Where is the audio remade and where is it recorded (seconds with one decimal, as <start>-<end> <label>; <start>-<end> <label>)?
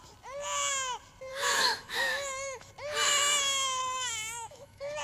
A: 0.0-1.3 recorded; 1.3-2.7 remade; 2.7-3.8 recorded; 3.8-5.0 remade